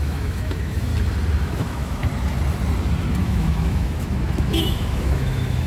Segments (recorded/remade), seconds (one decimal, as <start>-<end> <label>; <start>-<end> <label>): 0.0-0.9 remade; 0.9-1.4 recorded; 1.4-2.0 remade; 2.0-3.2 recorded; 3.2-5.7 remade